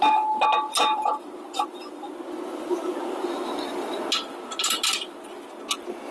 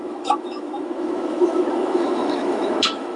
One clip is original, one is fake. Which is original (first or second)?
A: first